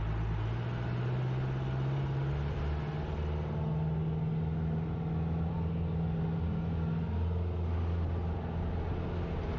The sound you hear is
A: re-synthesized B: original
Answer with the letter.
B